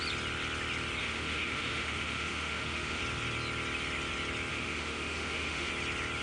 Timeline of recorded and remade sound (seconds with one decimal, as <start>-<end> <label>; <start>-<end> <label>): 0.0-1.0 recorded; 1.0-3.0 remade; 3.0-4.5 recorded; 4.5-5.7 remade; 5.7-6.2 recorded